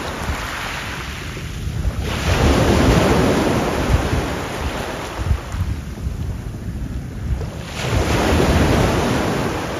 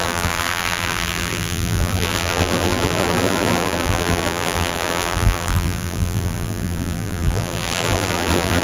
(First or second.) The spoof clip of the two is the second